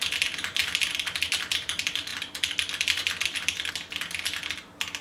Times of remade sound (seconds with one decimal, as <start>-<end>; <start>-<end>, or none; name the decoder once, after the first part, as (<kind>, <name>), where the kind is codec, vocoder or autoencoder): 0.6-1.3 (vocoder, BigVGAN v2); 2.1-3.7